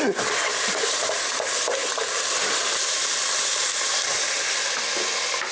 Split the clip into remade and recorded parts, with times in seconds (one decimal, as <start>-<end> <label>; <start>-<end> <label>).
0.0-1.8 recorded; 1.8-4.8 remade; 4.8-5.5 recorded